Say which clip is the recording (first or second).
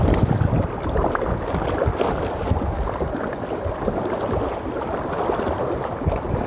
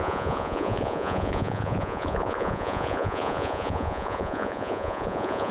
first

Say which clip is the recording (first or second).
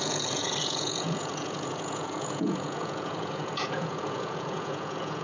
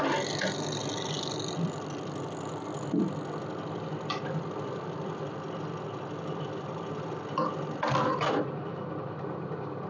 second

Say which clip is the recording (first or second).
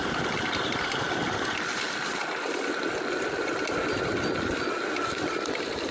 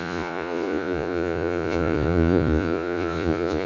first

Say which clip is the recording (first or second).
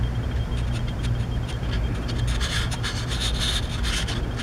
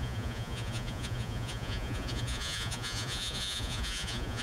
first